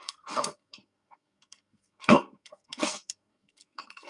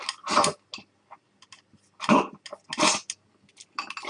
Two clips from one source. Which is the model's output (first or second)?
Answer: first